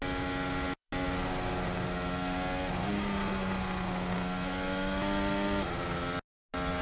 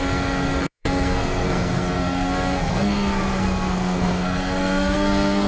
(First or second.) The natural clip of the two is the first